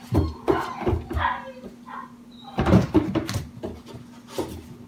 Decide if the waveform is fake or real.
real